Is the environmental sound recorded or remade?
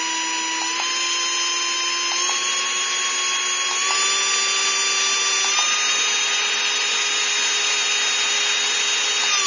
recorded